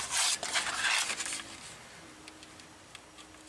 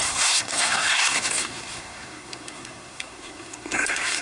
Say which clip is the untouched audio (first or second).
first